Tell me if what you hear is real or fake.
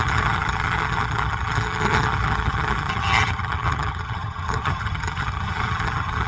fake